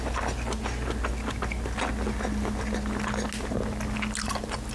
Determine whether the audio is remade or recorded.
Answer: recorded